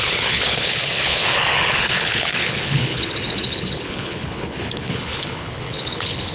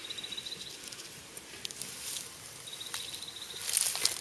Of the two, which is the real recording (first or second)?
second